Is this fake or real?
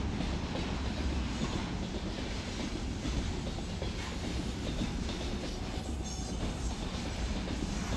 real